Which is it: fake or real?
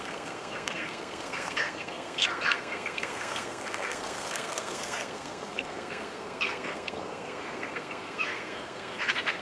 fake